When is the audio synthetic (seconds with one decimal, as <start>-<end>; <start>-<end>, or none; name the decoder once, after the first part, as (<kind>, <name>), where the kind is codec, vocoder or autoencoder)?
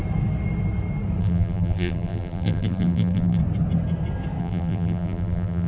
1.2-3.4 (vocoder, BigVGAN v2); 4.4-5.7